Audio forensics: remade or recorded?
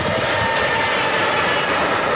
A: recorded